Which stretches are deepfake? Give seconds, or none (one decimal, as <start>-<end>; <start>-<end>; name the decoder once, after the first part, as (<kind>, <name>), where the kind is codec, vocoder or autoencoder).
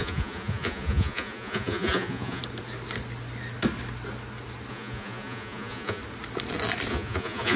0.0-2.4 (vocoder, Vocos); 4.7-6.0; 6.9-7.6